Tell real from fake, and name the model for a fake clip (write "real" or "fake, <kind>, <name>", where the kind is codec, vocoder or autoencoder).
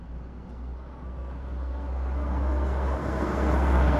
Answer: fake, codec, SNAC